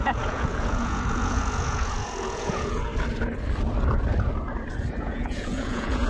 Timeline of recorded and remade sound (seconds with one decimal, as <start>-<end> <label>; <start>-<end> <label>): 0.0-2.9 remade; 2.9-5.0 recorded; 5.0-6.1 remade